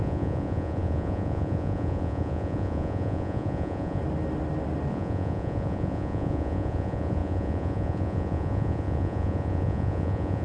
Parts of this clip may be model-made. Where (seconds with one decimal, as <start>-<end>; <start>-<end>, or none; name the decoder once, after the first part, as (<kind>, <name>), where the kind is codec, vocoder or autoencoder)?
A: 0.0-4.0 (vocoder, Vocos); 4.9-10.4

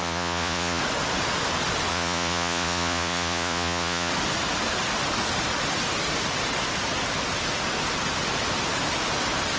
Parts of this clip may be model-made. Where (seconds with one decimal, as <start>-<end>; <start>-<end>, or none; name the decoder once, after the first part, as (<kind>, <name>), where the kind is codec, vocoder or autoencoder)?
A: 0.0-0.8 (vocoder, Vocos); 1.9-4.1

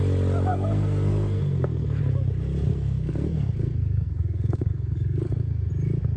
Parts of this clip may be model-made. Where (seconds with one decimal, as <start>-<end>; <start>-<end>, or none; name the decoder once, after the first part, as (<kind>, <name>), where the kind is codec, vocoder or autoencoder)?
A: 0.5-2.0 (codec, SNAC); 2.7-5.7

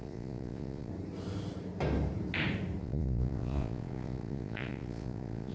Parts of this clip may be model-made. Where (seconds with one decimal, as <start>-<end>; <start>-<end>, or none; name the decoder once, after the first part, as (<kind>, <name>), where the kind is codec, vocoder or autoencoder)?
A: 0.0-0.9 (vocoder, Vocos); 2.8-5.5

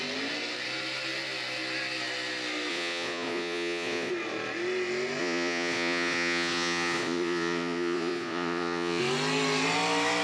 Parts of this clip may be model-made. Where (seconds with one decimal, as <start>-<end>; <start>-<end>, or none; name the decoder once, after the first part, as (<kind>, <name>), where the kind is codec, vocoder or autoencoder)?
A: 2.7-4.1 (vocoder, Vocos); 5.2-9.0

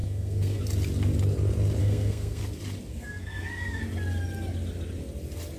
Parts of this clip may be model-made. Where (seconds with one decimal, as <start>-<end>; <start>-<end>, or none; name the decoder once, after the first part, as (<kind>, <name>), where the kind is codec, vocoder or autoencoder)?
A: 0.0-0.6 (codec, SNAC); 1.8-2.4; 2.9-3.8

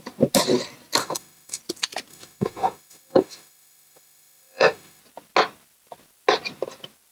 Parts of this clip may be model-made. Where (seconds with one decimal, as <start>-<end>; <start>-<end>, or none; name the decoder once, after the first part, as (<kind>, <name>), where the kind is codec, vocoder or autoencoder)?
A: 1.0-1.6 (autoencoder, DAC-VAE); 2.1-5.0

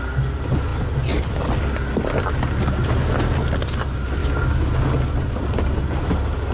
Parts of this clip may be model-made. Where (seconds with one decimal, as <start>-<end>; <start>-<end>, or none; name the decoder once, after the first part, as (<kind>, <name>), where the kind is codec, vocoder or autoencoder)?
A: 4.2-4.7 (codec, DAC)